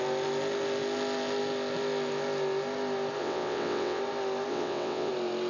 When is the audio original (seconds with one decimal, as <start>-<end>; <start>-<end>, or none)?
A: 0.0-3.2; 4.0-4.5; 5.1-5.5